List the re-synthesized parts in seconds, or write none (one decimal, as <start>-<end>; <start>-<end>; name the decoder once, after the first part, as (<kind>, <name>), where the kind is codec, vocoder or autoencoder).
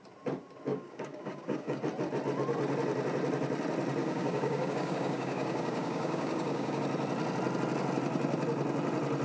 0.7-1.8 (codec, DAC); 4.0-6.8